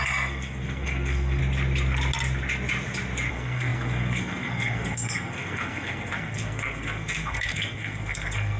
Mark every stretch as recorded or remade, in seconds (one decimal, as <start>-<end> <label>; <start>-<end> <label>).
0.0-1.4 remade; 1.4-3.3 recorded; 3.3-8.6 remade